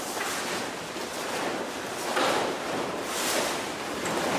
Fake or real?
real